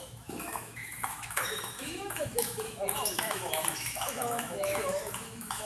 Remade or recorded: remade